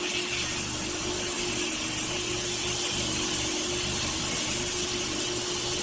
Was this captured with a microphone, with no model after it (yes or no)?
yes